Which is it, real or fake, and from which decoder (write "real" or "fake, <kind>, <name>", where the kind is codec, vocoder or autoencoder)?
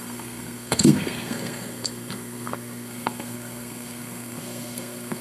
fake, codec, SNAC